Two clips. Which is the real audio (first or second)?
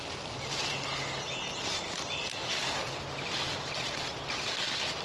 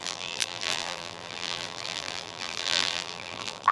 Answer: first